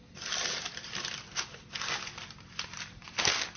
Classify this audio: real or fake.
real